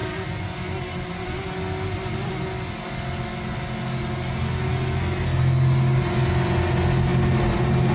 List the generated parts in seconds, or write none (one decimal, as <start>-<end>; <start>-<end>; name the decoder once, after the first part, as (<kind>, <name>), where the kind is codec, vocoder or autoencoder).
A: none